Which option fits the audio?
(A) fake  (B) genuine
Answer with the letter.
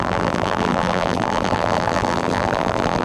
A